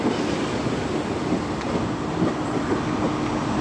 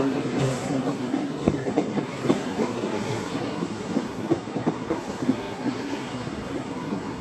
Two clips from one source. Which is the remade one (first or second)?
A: second